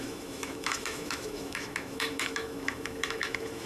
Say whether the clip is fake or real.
fake